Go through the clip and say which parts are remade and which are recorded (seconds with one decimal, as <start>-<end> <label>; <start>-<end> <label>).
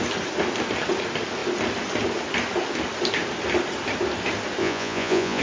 0.0-4.6 recorded; 4.6-5.4 remade